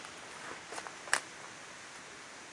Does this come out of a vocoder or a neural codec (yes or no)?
no